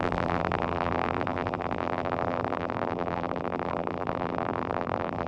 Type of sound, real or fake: fake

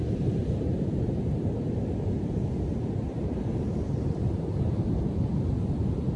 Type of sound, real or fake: fake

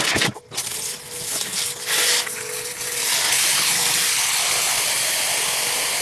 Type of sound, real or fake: real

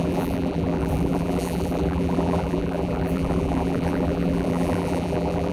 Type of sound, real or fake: fake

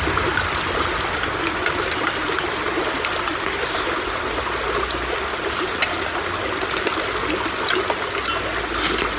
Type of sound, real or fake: real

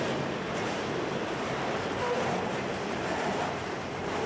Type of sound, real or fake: fake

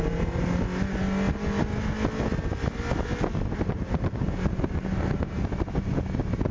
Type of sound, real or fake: real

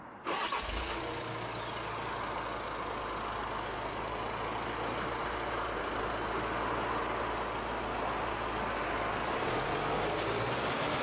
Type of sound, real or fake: real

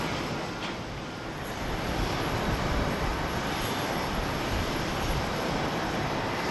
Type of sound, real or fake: fake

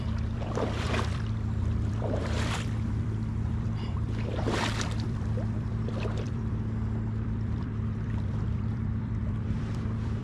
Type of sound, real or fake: fake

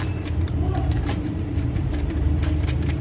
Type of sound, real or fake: fake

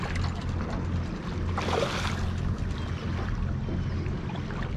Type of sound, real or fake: real